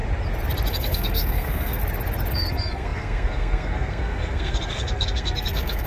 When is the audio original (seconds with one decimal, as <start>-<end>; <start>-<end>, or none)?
0.0-0.7; 1.8-2.3